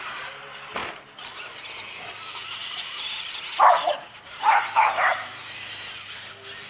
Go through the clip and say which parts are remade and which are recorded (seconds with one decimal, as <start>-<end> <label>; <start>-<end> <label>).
0.0-0.8 recorded; 0.8-1.8 remade; 1.8-2.6 recorded; 2.6-4.6 remade; 4.6-5.1 recorded; 5.1-5.6 remade; 5.6-6.7 recorded